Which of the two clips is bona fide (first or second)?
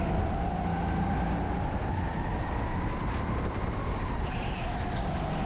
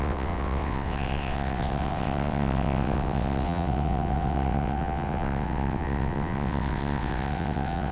first